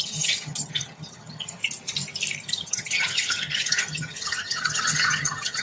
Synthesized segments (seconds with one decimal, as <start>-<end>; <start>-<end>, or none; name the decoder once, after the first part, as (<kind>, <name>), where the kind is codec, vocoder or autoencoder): 0.0-1.6 (vocoder, HiFi-GAN); 2.5-5.6